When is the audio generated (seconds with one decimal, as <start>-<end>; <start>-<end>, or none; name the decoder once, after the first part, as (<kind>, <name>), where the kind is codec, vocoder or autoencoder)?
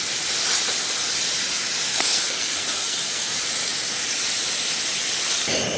1.9-3.3 (codec, SNAC)